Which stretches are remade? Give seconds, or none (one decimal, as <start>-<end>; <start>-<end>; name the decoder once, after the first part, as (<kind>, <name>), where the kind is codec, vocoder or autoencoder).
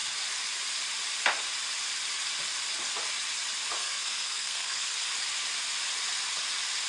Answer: 3.8-5.1 (codec, SNAC)